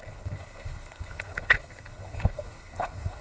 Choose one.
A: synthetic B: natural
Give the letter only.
A